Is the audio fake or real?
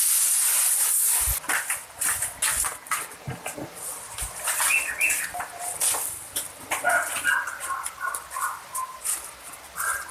real